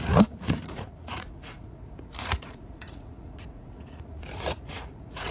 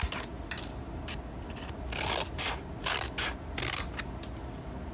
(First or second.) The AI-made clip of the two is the first